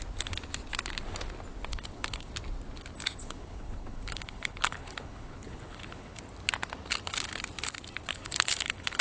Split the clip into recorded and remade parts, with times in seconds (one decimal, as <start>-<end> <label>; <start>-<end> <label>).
0.0-1.7 recorded; 1.7-2.3 remade; 2.3-3.2 recorded; 3.2-6.2 remade; 6.2-8.1 recorded; 8.1-9.0 remade